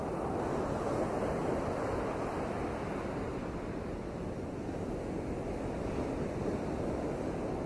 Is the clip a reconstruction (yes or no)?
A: no